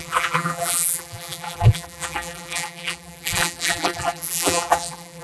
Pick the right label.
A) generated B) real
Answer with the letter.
A